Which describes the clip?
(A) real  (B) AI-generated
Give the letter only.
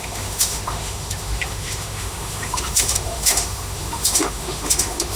B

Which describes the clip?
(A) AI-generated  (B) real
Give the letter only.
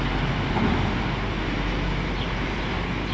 B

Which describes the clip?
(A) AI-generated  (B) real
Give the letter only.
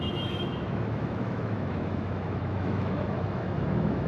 A